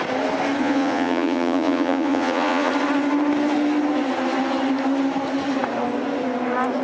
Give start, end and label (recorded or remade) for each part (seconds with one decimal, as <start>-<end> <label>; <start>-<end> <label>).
0.0-0.6 recorded; 0.6-2.7 remade; 2.7-6.8 recorded